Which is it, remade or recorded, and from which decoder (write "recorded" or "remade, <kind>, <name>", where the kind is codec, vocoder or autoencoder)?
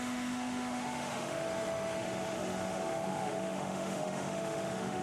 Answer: remade, autoencoder, DAC-VAE